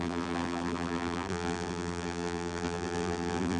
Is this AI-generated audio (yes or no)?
yes